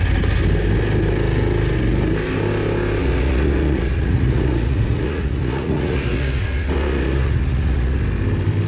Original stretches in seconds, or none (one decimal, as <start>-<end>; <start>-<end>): 0.0-3.0; 8.0-8.7